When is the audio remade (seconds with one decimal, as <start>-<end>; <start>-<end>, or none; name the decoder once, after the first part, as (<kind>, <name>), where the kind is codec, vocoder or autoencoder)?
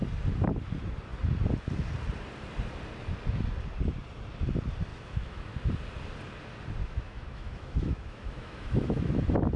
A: 4.9-5.5 (autoencoder, DAC-VAE); 6.8-9.1